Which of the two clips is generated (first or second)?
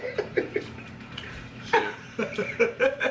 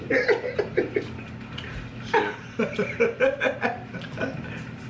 first